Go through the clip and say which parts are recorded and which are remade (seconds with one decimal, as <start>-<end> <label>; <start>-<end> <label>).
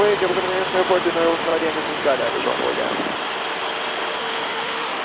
0.0-4.2 recorded; 4.2-5.0 remade